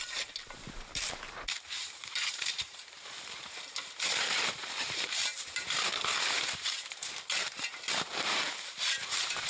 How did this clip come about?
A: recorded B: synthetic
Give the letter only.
B